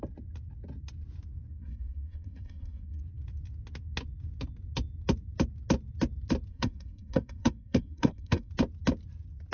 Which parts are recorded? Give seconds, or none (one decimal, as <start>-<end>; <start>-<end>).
0.0-1.5; 3.0-6.5; 8.5-9.5